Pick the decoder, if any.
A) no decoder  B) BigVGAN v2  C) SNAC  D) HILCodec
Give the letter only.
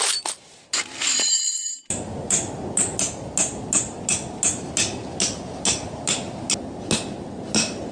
A